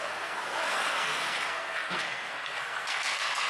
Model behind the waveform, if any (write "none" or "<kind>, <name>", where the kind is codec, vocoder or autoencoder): codec, SNAC